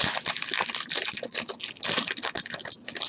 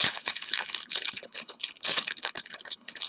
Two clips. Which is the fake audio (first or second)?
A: second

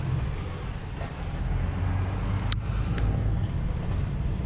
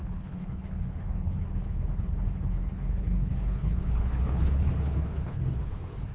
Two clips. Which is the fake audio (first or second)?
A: second